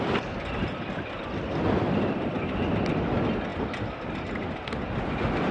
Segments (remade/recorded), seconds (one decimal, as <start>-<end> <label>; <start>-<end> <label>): 0.0-5.5 recorded